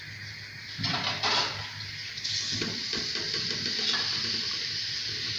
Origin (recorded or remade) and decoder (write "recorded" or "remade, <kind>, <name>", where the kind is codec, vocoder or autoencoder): recorded